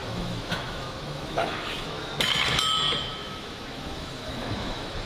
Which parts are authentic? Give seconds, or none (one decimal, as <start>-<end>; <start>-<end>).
2.1-3.1